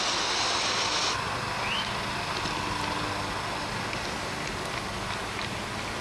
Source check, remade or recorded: recorded